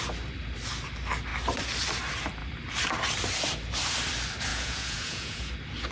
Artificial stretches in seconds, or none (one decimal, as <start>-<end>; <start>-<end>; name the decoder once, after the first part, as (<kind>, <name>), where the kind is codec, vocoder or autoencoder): 4.5-5.5 (vocoder, Vocos)